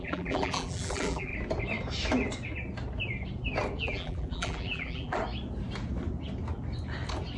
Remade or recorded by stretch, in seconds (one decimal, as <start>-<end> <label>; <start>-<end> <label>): 0.0-1.3 remade; 1.3-3.8 recorded; 3.8-5.2 remade; 5.2-7.4 recorded